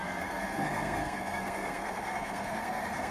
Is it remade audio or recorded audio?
remade